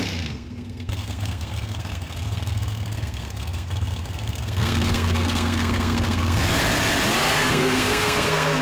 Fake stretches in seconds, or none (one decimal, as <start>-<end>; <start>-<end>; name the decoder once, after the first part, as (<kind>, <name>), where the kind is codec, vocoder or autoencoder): 0.0-6.6 (codec, SNAC); 7.2-8.6